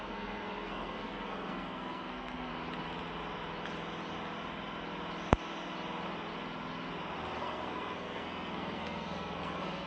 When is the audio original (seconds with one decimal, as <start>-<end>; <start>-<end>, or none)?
2.5-7.4